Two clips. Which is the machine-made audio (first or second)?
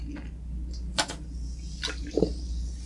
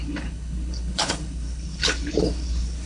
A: second